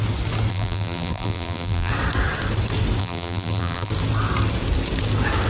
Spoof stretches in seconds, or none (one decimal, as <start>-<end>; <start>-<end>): 0.5-1.9; 3.0-3.9

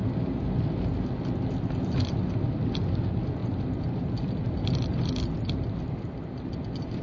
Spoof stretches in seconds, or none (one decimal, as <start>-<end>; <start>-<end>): none

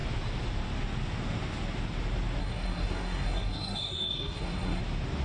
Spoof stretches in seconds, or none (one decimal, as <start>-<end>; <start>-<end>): 2.4-4.8

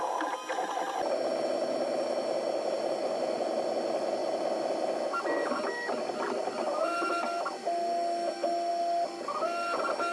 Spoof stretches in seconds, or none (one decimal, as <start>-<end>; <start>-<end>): 3.0-3.5

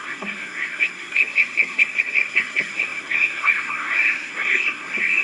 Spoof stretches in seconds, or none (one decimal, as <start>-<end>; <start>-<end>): 0.0-5.2

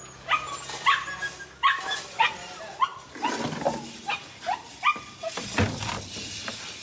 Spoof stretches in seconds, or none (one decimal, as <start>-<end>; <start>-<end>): none

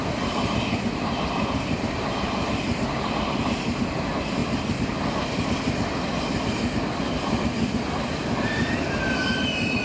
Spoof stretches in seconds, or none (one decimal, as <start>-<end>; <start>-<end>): none

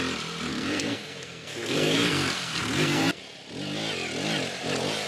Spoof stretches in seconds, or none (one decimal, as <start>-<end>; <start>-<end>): 0.5-3.2